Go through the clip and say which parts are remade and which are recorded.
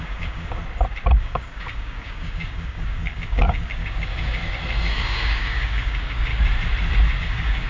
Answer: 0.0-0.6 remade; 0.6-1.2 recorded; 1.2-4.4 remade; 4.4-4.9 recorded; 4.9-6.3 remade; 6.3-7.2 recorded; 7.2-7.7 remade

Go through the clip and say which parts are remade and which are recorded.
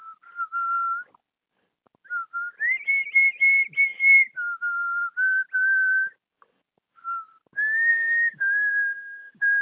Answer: 0.0-7.9 recorded; 7.9-9.6 remade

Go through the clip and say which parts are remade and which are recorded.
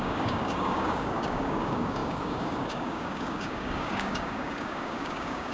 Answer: 0.0-5.5 remade